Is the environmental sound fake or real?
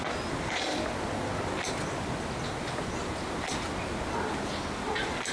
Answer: real